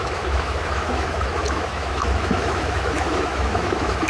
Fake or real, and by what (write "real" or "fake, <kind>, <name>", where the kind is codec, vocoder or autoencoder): fake, autoencoder, DAC-VAE